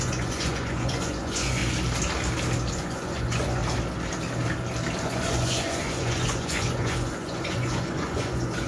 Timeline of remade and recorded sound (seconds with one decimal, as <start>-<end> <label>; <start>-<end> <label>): 0.0-1.6 remade; 1.6-2.7 recorded; 2.7-3.6 remade; 3.6-5.0 recorded; 5.0-8.7 remade